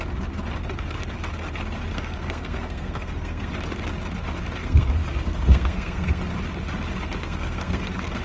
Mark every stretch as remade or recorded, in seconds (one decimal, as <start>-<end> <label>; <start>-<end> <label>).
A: 0.0-1.9 recorded; 1.9-3.5 remade; 3.5-4.6 recorded; 4.6-6.2 remade; 6.2-7.2 recorded; 7.2-8.2 remade